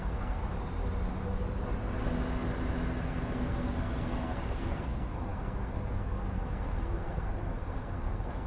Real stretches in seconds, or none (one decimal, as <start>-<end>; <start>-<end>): 0.4-3.0